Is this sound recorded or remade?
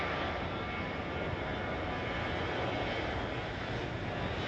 recorded